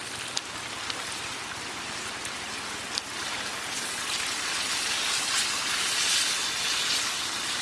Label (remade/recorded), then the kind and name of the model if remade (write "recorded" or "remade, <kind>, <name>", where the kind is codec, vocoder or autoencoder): recorded